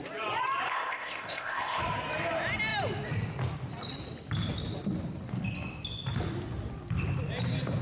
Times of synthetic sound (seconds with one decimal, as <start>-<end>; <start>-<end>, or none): 0.7-1.8